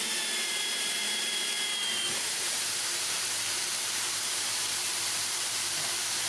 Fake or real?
fake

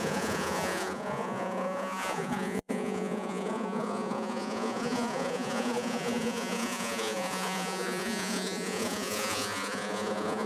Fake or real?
fake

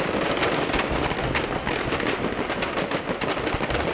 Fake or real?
real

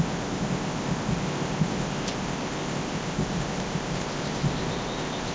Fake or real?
fake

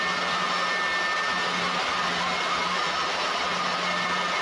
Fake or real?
real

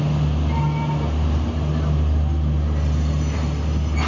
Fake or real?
real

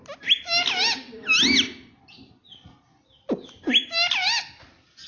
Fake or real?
real